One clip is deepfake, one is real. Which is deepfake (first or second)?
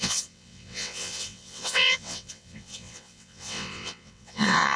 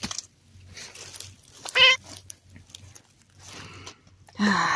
first